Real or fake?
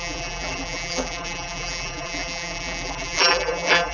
fake